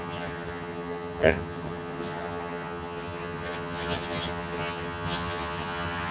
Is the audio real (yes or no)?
no